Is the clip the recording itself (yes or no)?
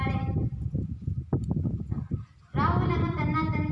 yes